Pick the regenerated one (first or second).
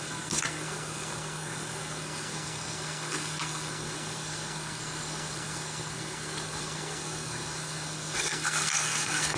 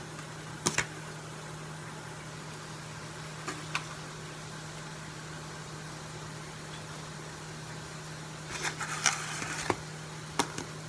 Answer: first